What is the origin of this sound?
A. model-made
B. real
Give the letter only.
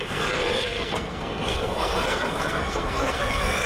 A